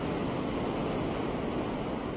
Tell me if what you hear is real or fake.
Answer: fake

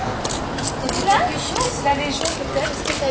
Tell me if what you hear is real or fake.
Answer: real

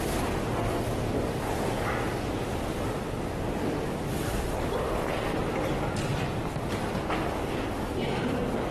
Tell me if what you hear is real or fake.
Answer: real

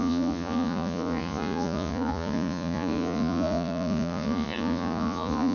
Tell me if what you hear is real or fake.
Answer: fake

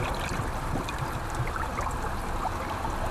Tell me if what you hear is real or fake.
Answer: real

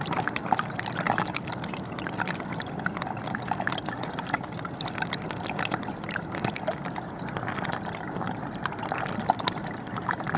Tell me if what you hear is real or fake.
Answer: real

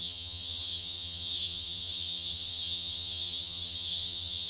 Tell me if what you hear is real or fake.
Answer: fake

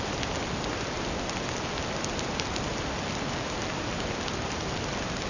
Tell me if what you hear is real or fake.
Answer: real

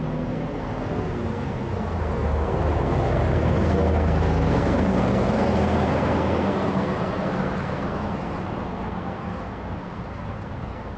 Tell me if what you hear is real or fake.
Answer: fake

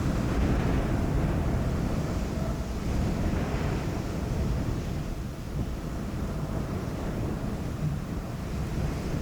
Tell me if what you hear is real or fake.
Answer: fake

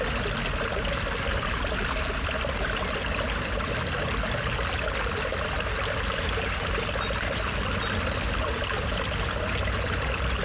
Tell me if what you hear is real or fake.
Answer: real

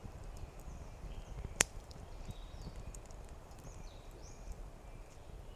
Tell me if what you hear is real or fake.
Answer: fake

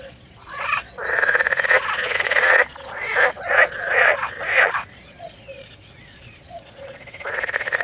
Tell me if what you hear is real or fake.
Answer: fake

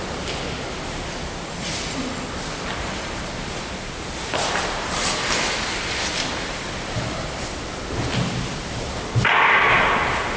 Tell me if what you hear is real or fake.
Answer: real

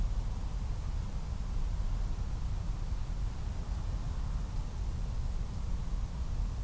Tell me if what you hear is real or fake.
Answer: real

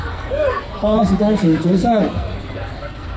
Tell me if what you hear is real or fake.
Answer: fake